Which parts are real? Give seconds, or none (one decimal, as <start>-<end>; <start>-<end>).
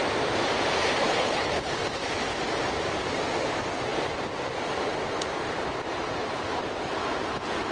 0.0-1.0; 1.8-7.7